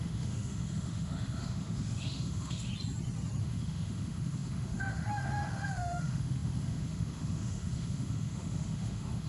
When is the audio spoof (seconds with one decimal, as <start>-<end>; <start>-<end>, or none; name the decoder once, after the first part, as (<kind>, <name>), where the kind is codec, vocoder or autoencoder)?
0.0-2.7 (autoencoder, DAC-VAE); 3.4-9.3